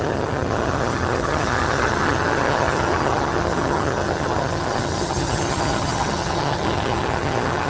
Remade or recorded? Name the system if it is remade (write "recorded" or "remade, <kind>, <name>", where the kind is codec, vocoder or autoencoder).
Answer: remade, vocoder, HiFi-GAN